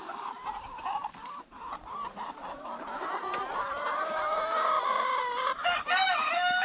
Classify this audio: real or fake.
fake